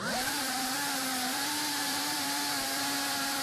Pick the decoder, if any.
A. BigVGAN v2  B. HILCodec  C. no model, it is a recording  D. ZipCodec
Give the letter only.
A